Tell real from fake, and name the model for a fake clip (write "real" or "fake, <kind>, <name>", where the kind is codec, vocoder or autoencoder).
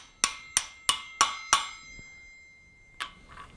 real